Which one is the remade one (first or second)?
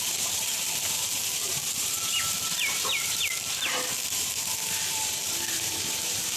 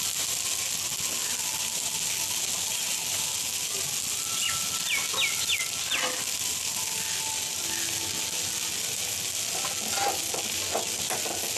first